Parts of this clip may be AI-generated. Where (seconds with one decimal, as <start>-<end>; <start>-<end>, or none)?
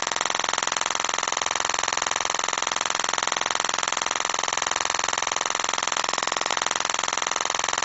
none